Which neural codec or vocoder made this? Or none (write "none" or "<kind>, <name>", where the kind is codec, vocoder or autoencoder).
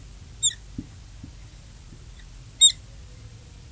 none